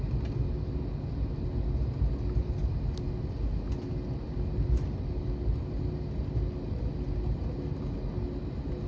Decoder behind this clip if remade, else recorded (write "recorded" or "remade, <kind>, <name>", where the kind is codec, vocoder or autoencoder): recorded